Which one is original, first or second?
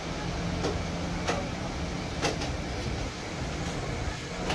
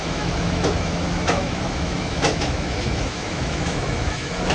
first